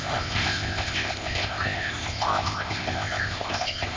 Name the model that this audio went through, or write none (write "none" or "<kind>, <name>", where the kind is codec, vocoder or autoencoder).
codec, ZipCodec